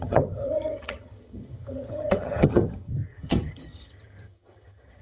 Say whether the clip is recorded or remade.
remade